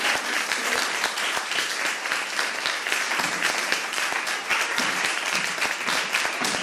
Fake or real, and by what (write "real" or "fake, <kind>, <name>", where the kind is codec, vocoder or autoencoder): fake, vocoder, BigVGAN v2